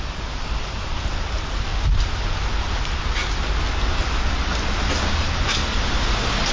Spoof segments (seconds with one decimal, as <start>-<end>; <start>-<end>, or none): 0.0-1.7; 5.1-5.6